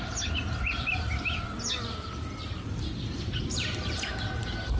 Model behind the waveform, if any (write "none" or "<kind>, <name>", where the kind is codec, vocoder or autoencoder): none